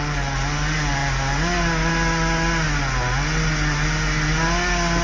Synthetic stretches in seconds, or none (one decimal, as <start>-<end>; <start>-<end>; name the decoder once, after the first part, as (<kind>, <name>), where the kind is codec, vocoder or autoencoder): none